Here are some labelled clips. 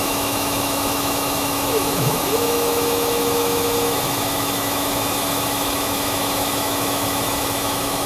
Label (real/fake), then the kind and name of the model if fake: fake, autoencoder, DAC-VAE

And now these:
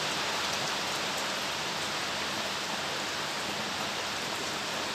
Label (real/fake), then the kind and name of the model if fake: real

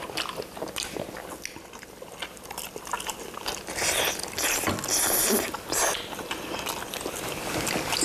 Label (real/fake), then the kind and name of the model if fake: real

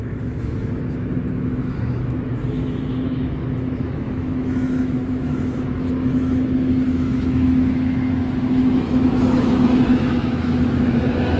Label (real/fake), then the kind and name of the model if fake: fake, autoencoder, DAC-VAE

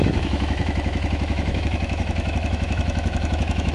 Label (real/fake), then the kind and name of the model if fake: fake, autoencoder, DAC-VAE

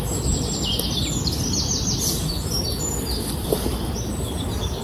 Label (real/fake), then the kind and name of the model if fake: real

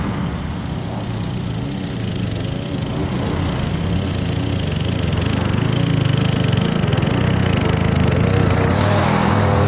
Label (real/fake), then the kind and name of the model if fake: real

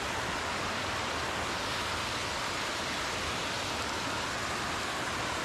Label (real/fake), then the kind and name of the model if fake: real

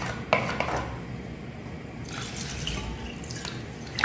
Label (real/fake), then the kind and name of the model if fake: real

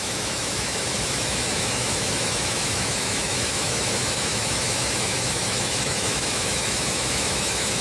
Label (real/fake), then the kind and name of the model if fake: fake, autoencoder, DAC-VAE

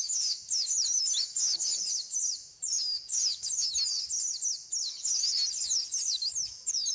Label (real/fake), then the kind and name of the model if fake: fake, autoencoder, DAC-VAE